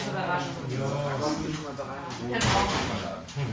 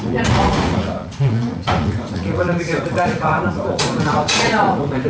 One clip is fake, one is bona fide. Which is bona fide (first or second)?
first